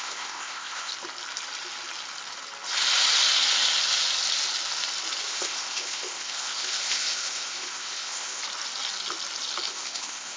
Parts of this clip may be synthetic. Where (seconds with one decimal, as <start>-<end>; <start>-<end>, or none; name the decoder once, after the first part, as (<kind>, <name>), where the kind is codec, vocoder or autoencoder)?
0.0-0.9 (codec, ZipCodec); 5.3-8.4; 9.7-10.4